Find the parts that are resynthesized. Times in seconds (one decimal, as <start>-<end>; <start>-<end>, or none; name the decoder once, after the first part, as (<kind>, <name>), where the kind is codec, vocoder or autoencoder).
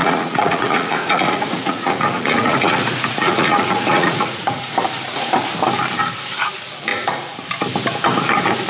0.0-4.7 (vocoder, Vocos); 6.9-7.5